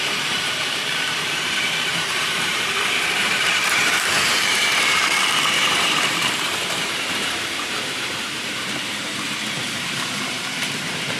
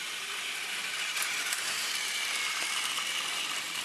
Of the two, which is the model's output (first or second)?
first